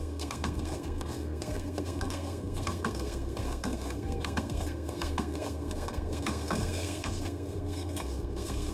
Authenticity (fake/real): fake